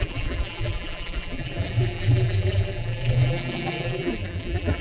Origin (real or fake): fake